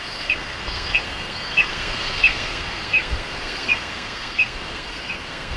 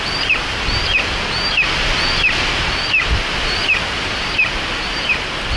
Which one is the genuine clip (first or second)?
second